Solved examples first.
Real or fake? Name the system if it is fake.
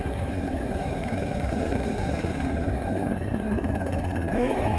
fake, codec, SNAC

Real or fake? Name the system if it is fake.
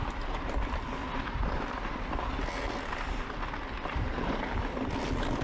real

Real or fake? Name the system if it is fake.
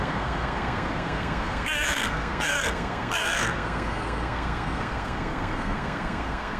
fake, codec, SNAC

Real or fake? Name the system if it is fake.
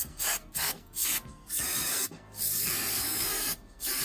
fake, codec, SNAC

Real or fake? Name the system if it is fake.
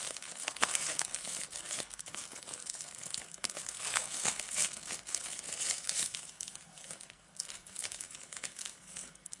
fake, codec, SNAC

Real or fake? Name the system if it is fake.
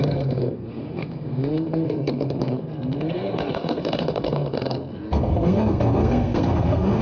fake, codec, SNAC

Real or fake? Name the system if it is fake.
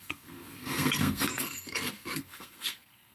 fake, codec, SNAC